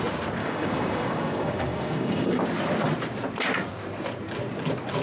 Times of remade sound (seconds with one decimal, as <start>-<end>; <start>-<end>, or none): 0.4-2.4